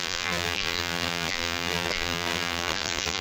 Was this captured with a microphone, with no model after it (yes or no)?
no